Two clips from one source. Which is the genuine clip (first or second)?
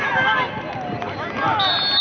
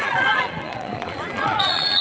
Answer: first